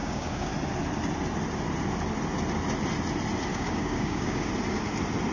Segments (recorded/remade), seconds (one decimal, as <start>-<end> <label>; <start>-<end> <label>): 0.0-0.5 remade; 0.5-3.5 recorded; 3.5-4.5 remade; 4.5-5.3 recorded